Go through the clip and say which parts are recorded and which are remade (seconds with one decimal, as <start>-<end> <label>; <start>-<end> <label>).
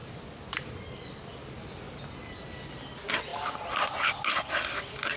0.0-0.7 remade; 0.7-5.2 recorded